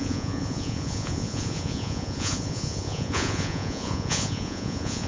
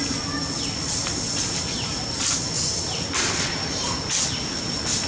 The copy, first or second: first